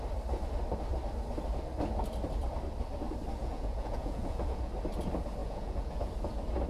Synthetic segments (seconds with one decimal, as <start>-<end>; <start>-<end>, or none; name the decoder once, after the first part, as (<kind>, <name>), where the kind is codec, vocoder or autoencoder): 3.4-4.7 (vocoder, Vocos); 5.4-6.1